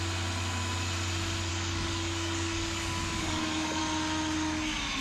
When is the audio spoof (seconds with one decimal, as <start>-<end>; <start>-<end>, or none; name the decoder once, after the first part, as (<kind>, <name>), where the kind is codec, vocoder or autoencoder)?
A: 1.5-3.8 (codec, DAC)